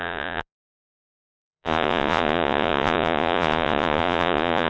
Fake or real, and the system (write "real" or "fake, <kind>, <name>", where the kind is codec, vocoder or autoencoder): fake, vocoder, Vocos